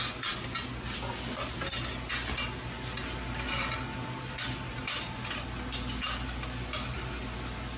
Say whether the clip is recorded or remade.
recorded